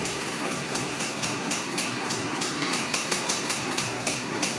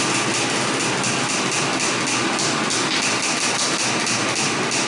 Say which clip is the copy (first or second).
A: first